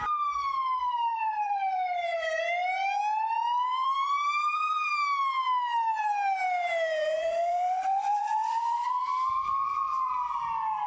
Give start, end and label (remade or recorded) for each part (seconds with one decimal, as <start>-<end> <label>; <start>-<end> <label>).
0.0-1.1 recorded; 1.1-2.4 remade; 2.4-3.7 recorded; 3.7-4.9 remade; 4.9-7.2 recorded; 7.2-10.1 remade; 10.1-10.9 recorded